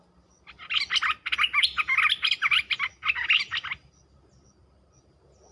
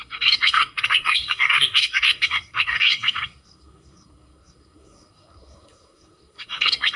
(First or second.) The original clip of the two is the first